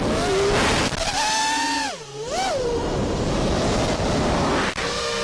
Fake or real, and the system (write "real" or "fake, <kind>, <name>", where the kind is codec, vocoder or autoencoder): real